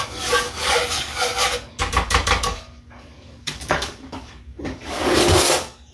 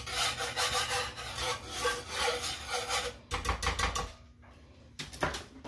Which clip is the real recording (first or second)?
second